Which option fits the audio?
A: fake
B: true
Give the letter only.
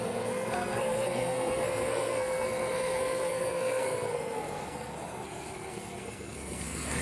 A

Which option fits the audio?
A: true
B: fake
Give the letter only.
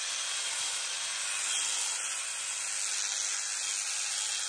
A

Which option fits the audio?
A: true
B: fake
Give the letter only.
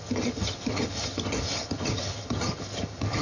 B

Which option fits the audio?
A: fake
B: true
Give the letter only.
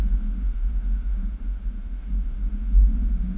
A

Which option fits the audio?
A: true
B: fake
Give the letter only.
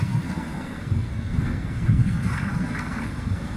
B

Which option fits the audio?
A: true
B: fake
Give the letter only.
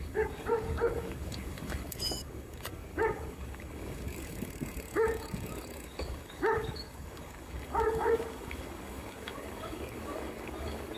B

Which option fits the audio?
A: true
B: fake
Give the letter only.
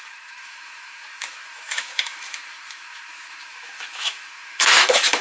B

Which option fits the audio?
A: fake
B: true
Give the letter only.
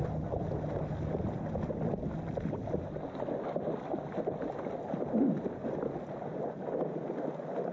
B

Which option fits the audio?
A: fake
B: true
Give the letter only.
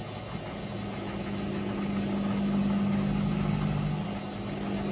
B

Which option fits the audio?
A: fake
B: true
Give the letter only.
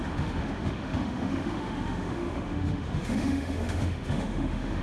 A